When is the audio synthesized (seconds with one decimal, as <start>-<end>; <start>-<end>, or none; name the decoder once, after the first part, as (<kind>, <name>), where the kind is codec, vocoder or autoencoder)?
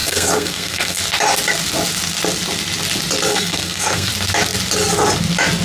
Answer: 0.0-1.0 (codec, SNAC); 3.3-4.1